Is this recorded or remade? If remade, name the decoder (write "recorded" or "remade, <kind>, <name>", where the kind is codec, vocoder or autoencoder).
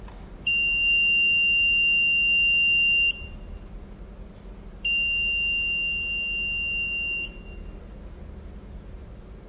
recorded